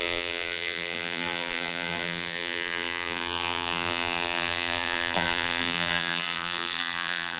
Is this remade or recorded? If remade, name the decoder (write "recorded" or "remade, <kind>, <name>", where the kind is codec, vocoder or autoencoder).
remade, vocoder, BigVGAN v2